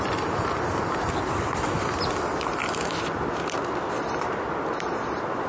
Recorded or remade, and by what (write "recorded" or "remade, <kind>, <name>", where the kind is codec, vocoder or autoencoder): recorded